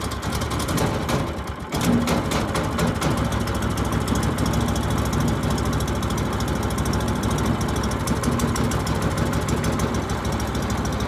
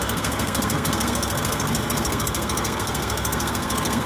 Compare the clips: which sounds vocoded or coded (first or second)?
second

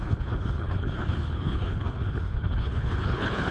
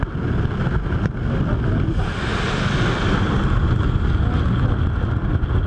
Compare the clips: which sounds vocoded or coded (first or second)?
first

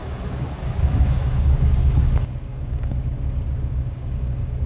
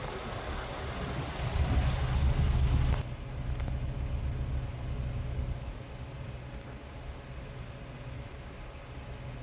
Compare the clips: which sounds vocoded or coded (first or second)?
first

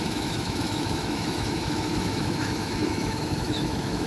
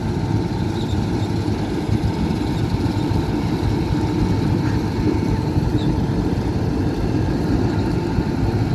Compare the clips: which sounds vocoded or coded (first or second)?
first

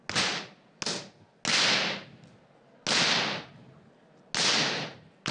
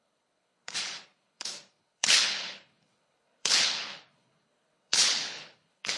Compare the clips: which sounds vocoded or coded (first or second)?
second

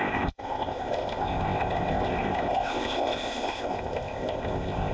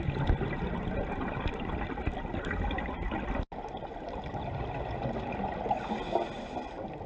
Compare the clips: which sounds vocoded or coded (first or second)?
first